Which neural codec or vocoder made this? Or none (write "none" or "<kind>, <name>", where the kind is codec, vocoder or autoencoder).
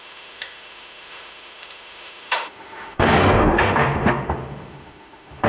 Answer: autoencoder, DAC-VAE